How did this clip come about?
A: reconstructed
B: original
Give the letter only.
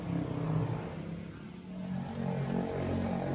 B